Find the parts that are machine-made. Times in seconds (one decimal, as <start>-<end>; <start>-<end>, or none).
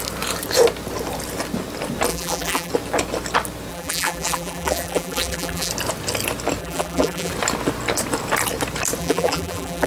2.1-2.7; 3.7-5.7; 6.6-7.3; 9.0-9.9